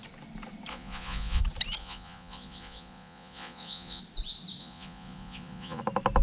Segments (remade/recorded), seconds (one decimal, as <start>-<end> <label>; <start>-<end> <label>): 0.0-0.7 recorded; 0.7-1.4 remade; 1.4-1.8 recorded; 1.8-4.0 remade; 4.0-4.6 recorded; 4.6-5.8 remade; 5.8-6.2 recorded